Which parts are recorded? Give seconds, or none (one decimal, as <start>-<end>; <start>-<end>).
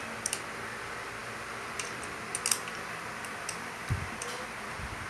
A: 0.0-5.1